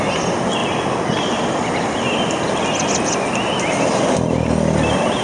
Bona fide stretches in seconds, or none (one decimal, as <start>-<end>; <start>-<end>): 0.0-5.2